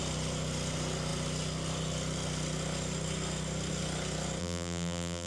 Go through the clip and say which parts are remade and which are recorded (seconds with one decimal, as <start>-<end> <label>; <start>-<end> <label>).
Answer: 0.0-4.4 recorded; 4.4-5.3 remade